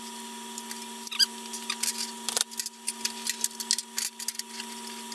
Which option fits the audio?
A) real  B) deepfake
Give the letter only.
A